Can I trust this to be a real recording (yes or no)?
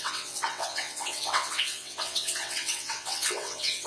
no